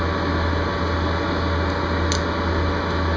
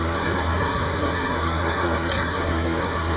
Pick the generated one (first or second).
second